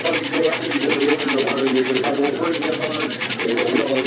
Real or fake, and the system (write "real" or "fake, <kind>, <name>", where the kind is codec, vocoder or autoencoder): fake, vocoder, Vocos